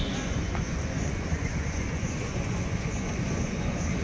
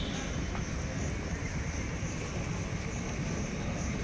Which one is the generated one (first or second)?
first